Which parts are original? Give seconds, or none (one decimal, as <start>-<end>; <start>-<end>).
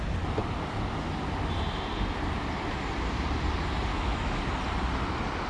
0.0-3.9; 4.4-5.5